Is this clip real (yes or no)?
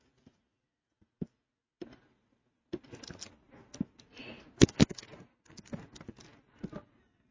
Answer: yes